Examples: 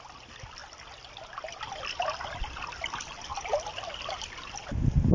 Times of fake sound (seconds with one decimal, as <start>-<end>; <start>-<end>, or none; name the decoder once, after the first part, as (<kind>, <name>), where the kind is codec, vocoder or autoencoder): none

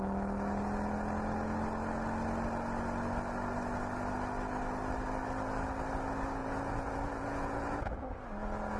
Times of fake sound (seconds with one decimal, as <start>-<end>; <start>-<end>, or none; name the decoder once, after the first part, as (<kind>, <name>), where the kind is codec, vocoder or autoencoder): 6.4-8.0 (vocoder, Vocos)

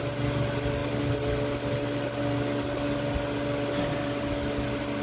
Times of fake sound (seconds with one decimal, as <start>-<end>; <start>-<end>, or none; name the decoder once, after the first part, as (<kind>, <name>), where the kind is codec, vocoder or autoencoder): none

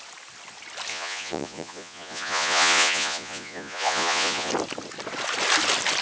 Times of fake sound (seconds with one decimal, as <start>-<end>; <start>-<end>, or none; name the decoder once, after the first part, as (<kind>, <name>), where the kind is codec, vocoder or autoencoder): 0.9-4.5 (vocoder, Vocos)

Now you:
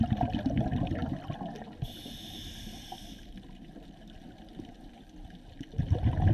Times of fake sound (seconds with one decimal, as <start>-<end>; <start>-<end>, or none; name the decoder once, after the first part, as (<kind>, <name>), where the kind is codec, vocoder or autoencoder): none

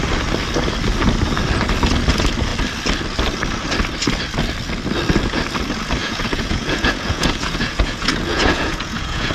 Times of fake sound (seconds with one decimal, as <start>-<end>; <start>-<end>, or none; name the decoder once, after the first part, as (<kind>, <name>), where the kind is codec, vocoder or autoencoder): 6.0-9.3 (vocoder, Vocos)

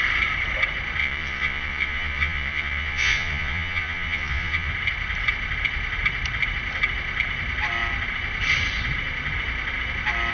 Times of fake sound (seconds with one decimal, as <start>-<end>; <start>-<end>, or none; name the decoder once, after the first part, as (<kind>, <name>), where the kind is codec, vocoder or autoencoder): 1.0-4.7 (vocoder, Vocos)

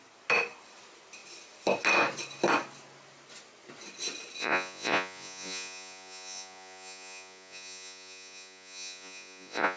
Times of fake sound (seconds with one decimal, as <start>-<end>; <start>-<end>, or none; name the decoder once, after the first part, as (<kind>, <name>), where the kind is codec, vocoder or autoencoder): 4.4-9.8 (vocoder, Vocos)